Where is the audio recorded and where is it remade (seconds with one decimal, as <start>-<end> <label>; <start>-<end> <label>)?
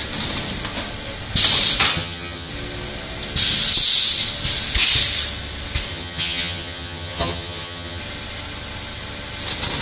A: 0.0-1.9 recorded; 1.9-2.5 remade; 2.5-5.9 recorded; 5.9-8.0 remade; 8.0-9.8 recorded